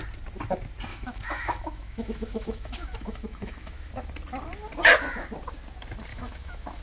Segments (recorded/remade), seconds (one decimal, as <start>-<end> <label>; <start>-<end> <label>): 0.0-0.9 recorded; 0.9-3.9 remade; 3.9-6.1 recorded; 6.1-6.8 remade